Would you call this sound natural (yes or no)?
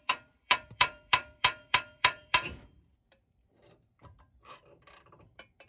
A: no